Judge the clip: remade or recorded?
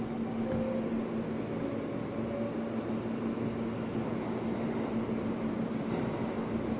recorded